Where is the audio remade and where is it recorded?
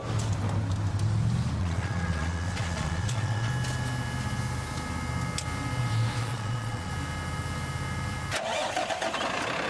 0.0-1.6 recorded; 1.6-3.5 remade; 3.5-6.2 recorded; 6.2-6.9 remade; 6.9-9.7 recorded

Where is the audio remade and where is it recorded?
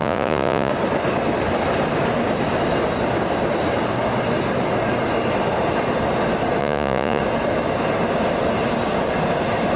0.0-0.7 remade; 0.7-6.6 recorded; 6.6-7.2 remade; 7.2-9.8 recorded